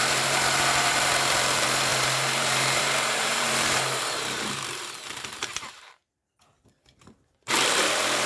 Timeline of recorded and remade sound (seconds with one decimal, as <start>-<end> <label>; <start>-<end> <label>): 0.0-8.3 remade